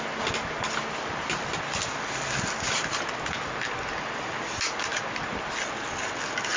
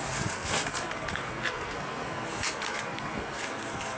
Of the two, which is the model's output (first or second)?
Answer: second